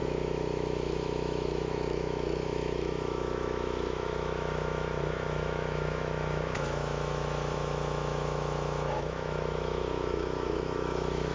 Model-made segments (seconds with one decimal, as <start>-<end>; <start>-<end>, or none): 0.0-11.3